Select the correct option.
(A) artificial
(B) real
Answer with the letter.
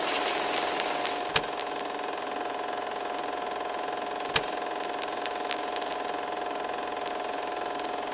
B